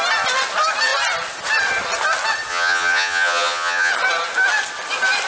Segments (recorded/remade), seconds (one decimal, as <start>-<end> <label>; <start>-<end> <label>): 0.0-2.5 recorded; 2.5-3.9 remade; 3.9-5.3 recorded